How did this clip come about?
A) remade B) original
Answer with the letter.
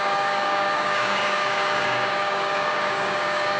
A